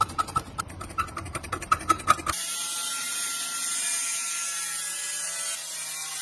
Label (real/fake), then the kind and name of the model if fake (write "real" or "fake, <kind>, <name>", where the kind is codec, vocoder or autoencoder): fake, vocoder, BigVGAN v2